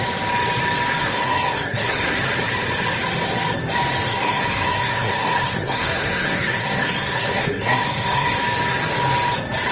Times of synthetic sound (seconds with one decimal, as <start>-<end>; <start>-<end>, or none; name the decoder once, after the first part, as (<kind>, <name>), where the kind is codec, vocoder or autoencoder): 1.0-2.2 (codec, SNAC); 4.1-8.4